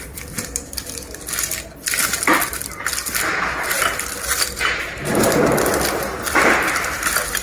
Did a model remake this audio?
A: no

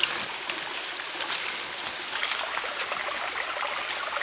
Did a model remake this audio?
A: no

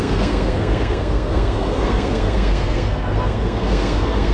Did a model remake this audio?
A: yes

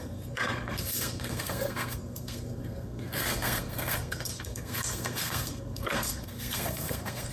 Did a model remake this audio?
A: yes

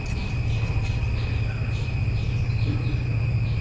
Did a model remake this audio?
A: no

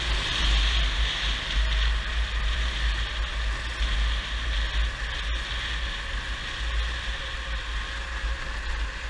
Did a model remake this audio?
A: no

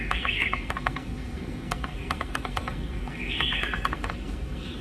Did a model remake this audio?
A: yes